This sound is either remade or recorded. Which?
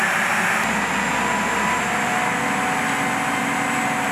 recorded